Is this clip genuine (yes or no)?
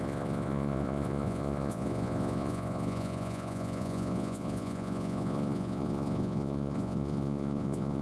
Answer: no